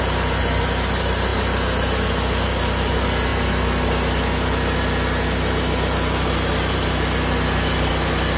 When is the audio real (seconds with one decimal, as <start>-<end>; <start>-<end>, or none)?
0.0-8.4